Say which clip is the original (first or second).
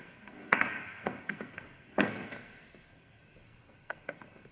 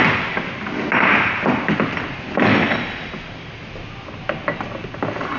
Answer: second